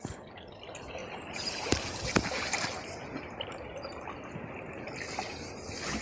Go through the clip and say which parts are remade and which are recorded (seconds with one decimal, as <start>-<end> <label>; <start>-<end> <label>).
0.0-1.0 recorded; 1.0-4.3 remade; 4.3-6.0 recorded